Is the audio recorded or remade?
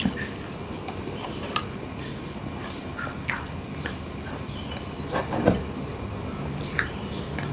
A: recorded